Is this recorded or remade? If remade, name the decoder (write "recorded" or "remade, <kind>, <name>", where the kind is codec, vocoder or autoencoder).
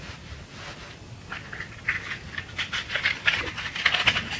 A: recorded